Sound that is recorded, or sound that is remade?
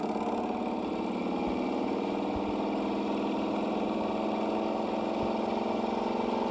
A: recorded